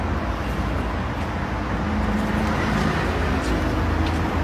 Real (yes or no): yes